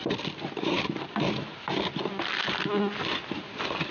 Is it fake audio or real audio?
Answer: real